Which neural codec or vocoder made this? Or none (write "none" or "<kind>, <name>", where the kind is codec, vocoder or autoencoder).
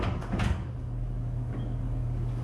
codec, DAC